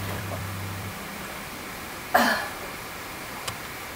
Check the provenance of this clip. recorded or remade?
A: remade